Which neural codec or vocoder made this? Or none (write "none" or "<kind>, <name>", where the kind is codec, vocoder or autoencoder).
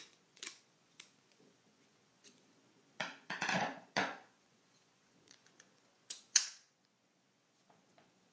vocoder, Vocos